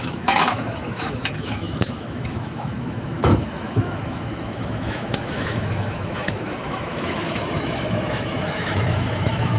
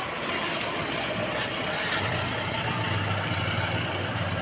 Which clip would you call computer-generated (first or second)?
first